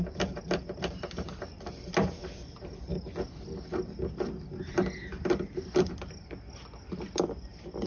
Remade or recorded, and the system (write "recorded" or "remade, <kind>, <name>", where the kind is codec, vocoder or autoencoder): recorded